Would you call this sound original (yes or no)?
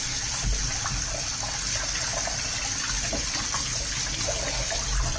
yes